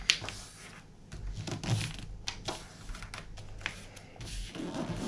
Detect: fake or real real